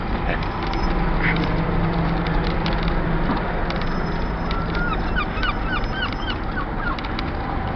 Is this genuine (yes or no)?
yes